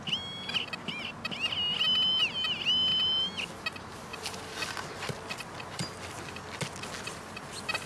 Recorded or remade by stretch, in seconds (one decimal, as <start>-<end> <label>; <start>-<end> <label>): 0.0-7.9 recorded